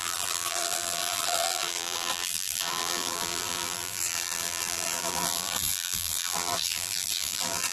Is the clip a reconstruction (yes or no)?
yes